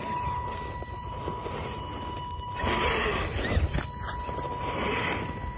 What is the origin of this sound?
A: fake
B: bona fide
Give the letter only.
B